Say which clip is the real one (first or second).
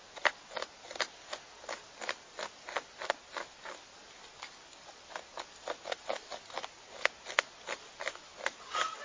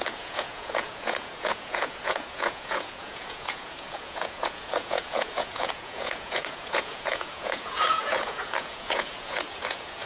first